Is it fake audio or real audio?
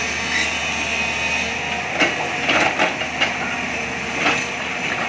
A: real